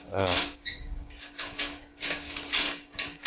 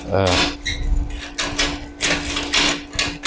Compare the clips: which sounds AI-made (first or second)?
first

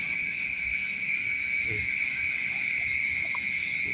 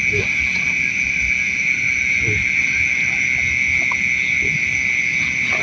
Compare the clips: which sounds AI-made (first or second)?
first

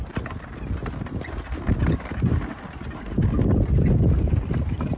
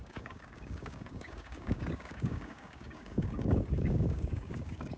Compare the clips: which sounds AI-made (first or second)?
second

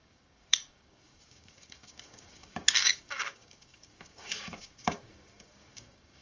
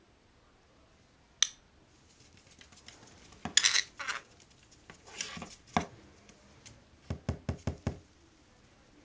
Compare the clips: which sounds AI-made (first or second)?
first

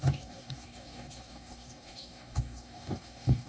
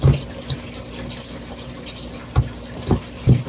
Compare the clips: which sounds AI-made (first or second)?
first